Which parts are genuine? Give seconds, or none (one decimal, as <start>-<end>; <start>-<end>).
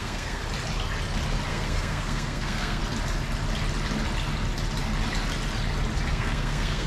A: 0.4-1.5; 2.8-6.1